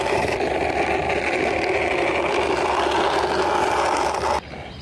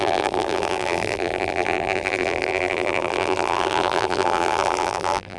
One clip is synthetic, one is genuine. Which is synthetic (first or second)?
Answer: second